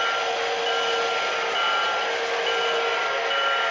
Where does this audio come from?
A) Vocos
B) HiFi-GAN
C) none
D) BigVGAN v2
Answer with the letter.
C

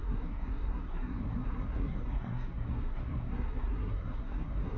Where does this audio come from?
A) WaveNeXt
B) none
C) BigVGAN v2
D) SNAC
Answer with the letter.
D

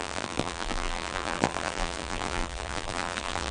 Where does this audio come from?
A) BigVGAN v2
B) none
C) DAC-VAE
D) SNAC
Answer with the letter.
A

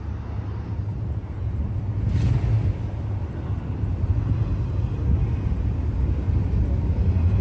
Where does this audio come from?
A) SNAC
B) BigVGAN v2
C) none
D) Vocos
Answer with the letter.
C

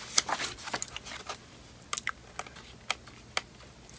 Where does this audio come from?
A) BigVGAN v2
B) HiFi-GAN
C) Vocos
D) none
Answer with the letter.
D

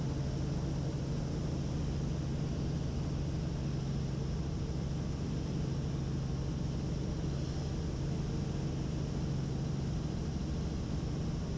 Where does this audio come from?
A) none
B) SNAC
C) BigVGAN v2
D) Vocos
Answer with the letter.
A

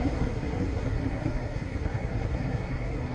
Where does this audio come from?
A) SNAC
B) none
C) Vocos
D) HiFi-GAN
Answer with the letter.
A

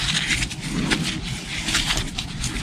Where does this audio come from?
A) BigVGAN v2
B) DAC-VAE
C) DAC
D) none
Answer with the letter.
D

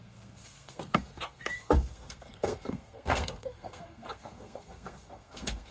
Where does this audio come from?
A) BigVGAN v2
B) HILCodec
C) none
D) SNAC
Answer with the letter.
D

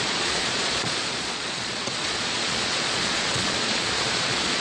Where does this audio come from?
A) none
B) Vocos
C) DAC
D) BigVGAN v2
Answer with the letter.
B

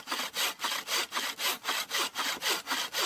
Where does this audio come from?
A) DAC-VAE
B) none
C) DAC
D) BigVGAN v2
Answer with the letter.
D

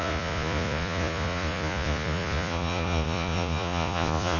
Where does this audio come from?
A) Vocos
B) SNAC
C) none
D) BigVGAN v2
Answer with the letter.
A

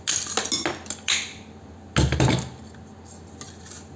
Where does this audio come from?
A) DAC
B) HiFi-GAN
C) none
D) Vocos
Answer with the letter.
C